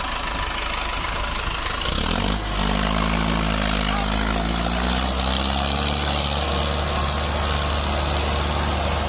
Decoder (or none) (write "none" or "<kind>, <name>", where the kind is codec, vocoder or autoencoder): none